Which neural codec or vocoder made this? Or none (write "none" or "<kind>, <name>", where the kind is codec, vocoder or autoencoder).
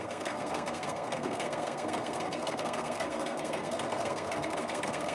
codec, SNAC